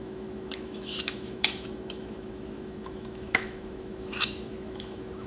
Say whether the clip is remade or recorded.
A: remade